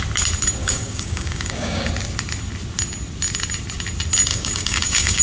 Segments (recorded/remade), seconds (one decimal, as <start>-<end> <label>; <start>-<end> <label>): 0.0-0.6 recorded; 0.6-1.9 remade; 1.9-4.3 recorded; 4.3-5.2 remade

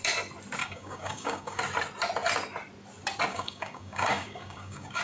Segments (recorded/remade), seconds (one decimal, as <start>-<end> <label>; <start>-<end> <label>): 0.0-0.6 recorded; 0.6-1.6 remade; 1.6-3.3 recorded; 3.3-5.0 remade